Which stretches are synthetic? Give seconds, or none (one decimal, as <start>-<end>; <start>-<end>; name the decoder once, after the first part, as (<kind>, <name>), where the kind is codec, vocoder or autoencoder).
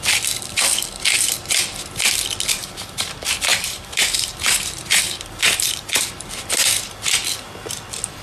2.6-3.1 (vocoder, BigVGAN v2); 3.5-6.1